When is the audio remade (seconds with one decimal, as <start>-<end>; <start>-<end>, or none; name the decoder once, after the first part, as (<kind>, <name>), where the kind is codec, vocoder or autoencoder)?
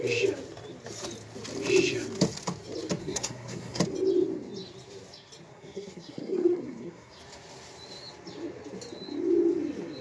3.0-3.8 (codec, SNAC); 5.5-7.2